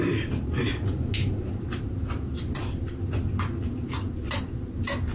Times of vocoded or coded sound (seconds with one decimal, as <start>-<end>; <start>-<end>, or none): none